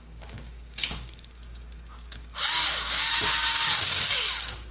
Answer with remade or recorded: remade